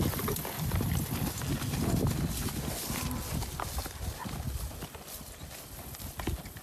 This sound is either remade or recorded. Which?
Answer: recorded